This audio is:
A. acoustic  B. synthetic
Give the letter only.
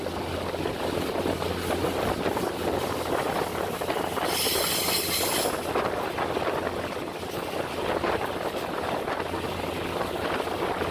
A